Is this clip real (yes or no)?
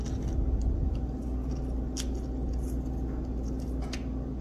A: yes